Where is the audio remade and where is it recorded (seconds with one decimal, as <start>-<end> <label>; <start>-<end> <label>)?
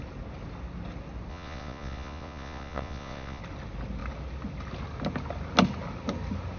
0.0-1.3 recorded; 1.3-3.4 remade; 3.4-6.6 recorded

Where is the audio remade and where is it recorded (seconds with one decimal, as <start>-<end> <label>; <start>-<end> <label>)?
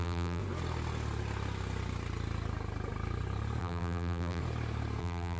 0.0-0.4 remade; 0.4-3.6 recorded; 3.6-4.4 remade; 4.4-5.0 recorded; 5.0-5.4 remade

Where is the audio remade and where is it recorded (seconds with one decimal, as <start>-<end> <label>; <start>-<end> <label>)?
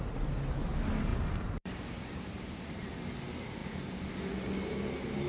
0.0-1.1 recorded; 1.1-3.0 remade; 3.0-3.6 recorded; 3.6-4.2 remade; 4.2-5.3 recorded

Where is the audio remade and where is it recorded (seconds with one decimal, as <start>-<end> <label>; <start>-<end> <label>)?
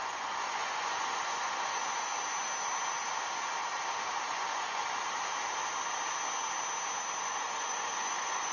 0.0-1.8 remade; 1.8-4.3 recorded; 4.3-4.8 remade; 4.8-7.2 recorded; 7.2-8.5 remade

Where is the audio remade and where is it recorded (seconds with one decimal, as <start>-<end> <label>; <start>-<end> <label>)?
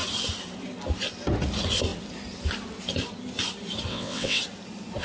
0.0-3.9 recorded; 3.9-4.4 remade; 4.4-5.0 recorded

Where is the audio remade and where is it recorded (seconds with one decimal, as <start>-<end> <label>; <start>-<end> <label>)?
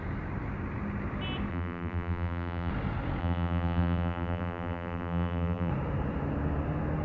0.0-1.5 recorded; 1.5-2.7 remade; 2.7-3.2 recorded; 3.2-5.7 remade; 5.7-7.0 recorded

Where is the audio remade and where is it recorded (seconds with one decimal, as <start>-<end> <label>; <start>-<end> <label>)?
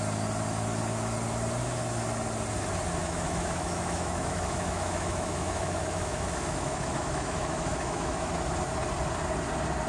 0.0-3.0 recorded; 3.0-8.3 remade; 8.3-9.9 recorded